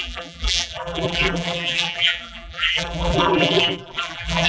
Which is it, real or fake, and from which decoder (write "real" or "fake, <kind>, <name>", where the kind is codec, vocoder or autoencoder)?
fake, vocoder, BigVGAN v2